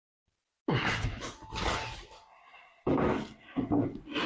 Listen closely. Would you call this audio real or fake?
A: real